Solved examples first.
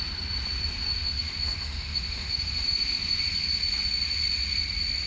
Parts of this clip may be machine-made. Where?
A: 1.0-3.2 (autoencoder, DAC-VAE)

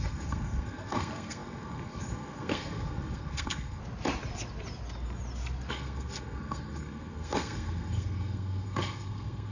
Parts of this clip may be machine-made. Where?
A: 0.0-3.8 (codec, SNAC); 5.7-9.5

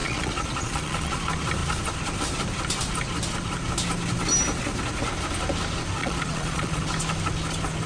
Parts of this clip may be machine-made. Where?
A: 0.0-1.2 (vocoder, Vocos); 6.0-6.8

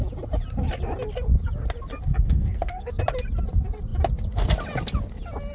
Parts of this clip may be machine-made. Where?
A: 2.1-3.0 (codec, SNAC)